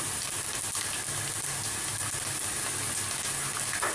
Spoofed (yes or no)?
no